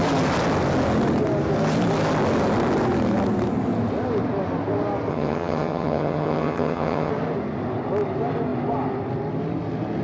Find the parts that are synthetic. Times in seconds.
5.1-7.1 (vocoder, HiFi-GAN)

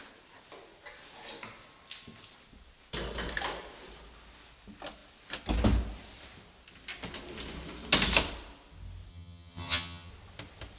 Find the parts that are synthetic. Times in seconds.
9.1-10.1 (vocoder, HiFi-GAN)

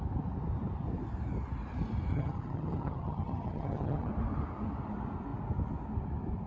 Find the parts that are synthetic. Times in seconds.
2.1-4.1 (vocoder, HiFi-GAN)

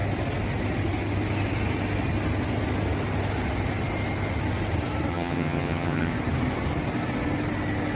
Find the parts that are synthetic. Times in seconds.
5.1-6.1 (vocoder, HiFi-GAN)

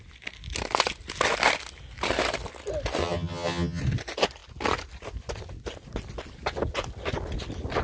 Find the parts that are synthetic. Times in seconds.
3.0-3.8 (vocoder, HiFi-GAN)

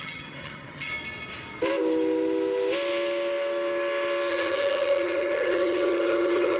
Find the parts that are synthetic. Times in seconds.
0.0-0.9 (vocoder, HiFi-GAN); 4.3-6.6

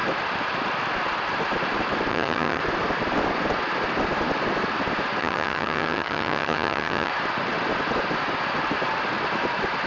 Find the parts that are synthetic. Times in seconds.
2.1-2.6 (vocoder, HiFi-GAN); 5.2-7.1

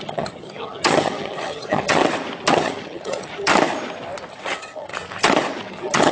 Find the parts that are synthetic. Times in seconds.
0.0-2.0 (vocoder, HiFi-GAN); 2.5-3.5; 4.3-4.9; 5.6-6.1